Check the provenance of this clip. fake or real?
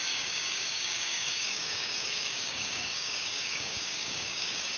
fake